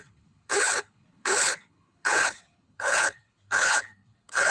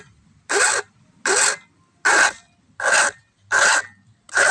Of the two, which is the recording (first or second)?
second